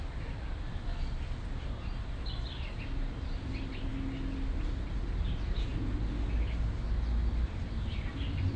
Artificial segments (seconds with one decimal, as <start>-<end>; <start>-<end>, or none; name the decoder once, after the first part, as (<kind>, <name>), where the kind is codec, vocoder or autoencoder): 0.0-3.9 (vocoder, BigVGAN v2); 7.3-8.6